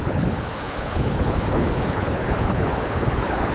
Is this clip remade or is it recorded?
remade